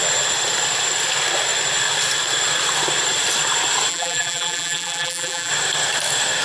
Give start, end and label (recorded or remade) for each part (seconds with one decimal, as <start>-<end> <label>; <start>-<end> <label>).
0.0-3.9 recorded; 3.9-5.5 remade; 5.5-6.4 recorded

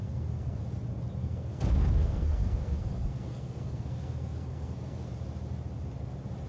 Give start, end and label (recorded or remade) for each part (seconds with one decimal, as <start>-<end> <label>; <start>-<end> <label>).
0.0-0.6 remade; 0.6-1.2 recorded; 1.2-5.1 remade; 5.1-6.5 recorded

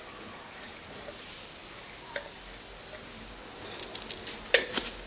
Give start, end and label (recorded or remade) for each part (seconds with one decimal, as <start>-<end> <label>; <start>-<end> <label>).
0.0-5.1 recorded

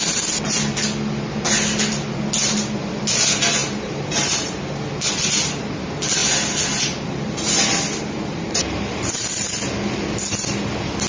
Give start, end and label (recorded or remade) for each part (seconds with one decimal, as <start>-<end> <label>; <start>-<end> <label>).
0.0-3.6 recorded; 3.6-4.5 remade; 4.5-11.1 recorded

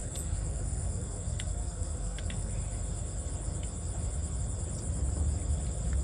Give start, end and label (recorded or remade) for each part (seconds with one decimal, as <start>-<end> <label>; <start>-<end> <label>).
0.0-2.5 remade; 2.5-6.0 recorded

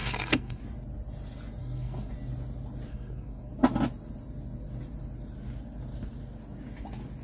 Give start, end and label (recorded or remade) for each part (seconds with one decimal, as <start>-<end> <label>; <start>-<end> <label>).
0.0-0.6 remade; 0.6-1.6 recorded; 1.6-2.1 remade; 2.1-2.9 recorded; 2.9-3.5 remade; 3.5-7.2 recorded